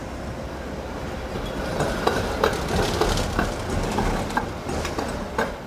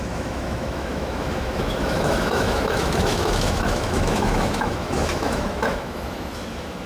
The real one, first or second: first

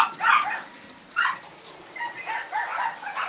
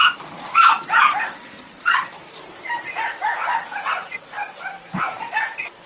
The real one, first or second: first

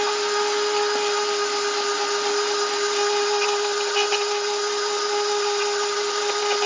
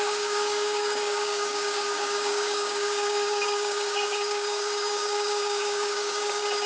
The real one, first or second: first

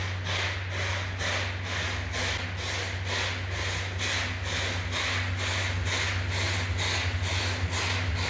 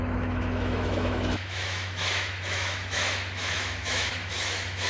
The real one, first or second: first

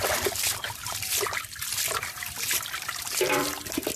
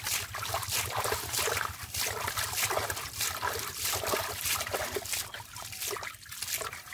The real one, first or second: second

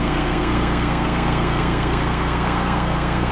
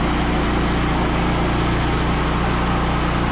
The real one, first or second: second